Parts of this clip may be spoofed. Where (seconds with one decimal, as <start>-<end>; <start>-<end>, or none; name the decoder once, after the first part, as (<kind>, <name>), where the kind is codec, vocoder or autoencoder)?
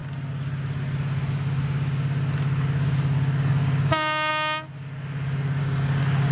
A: 3.5-4.3 (codec, DAC); 5.6-6.3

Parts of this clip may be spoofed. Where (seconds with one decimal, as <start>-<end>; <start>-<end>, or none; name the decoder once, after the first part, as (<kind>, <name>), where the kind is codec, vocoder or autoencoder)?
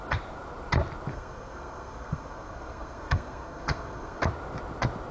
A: 1.1-4.2 (codec, SNAC)